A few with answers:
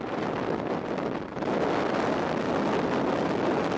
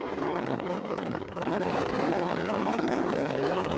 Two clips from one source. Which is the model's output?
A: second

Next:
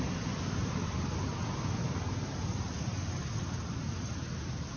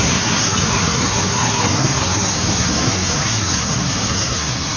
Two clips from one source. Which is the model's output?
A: second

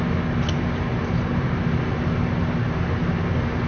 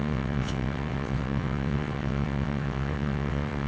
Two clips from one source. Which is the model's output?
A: second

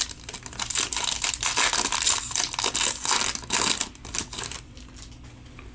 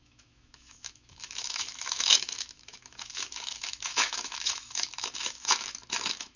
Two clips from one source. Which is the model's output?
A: second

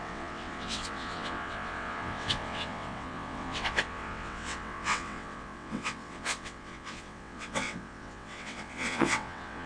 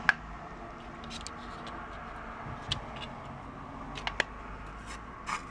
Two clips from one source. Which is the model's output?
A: first